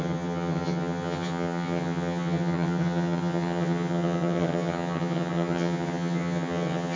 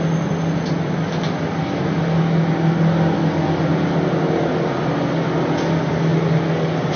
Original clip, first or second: second